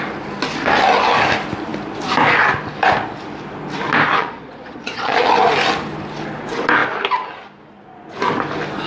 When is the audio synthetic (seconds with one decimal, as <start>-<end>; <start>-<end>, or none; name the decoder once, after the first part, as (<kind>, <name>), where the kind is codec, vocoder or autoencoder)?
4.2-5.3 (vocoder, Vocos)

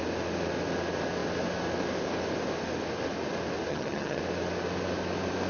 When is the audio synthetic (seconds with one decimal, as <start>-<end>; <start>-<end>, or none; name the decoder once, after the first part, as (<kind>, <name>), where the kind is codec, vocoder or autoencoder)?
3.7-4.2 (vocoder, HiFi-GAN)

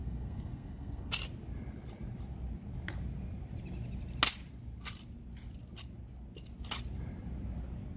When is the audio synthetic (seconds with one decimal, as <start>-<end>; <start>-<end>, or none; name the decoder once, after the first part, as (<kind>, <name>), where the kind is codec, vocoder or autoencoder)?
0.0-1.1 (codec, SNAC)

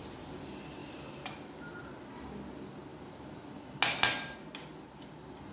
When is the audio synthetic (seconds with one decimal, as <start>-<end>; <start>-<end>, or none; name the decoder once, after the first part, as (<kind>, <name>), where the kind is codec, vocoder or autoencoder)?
none